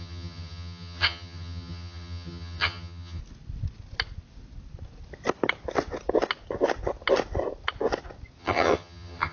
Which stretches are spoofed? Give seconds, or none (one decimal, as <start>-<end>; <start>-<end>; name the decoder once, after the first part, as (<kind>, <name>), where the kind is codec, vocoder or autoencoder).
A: 0.0-3.2 (vocoder, HiFi-GAN); 8.4-9.3